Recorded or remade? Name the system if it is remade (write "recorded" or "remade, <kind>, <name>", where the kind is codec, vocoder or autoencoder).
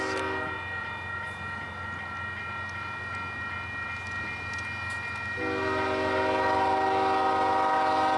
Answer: recorded